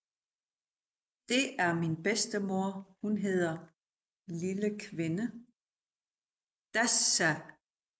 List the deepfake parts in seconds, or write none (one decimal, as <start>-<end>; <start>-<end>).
1.2-2.5